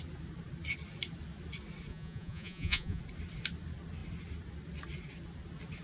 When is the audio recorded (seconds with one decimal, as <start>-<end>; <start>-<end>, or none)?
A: 0.0-1.9; 3.0-5.8